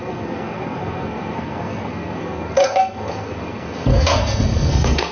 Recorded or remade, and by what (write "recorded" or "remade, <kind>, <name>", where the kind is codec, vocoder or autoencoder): remade, codec, SNAC